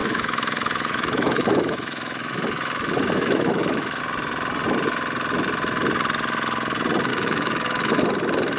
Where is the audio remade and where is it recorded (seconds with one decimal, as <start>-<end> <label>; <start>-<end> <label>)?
0.0-4.0 remade; 4.0-7.1 recorded; 7.1-8.0 remade; 8.0-8.6 recorded